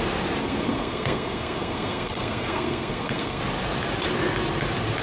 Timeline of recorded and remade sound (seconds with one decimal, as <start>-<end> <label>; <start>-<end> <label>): 0.0-0.4 recorded; 0.4-3.4 remade; 3.4-5.0 recorded